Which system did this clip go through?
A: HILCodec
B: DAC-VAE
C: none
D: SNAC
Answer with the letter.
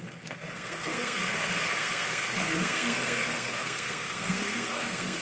D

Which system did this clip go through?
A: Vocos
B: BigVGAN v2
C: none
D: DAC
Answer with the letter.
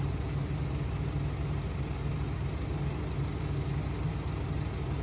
C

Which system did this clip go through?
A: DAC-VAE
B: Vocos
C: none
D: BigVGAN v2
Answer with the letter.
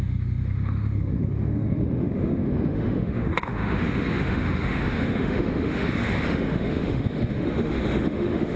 A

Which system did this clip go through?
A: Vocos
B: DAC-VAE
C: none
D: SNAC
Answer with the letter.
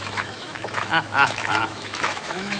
B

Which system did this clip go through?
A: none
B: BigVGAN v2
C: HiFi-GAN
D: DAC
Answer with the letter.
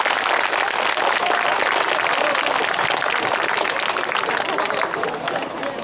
A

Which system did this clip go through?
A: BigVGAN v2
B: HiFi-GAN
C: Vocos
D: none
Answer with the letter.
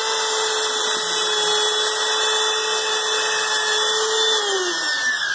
D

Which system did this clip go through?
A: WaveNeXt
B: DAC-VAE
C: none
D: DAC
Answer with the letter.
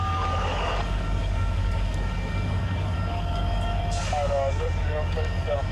D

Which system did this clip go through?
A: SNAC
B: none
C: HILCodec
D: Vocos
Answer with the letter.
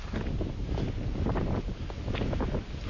B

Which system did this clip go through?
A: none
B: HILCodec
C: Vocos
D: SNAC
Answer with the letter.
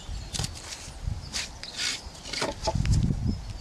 A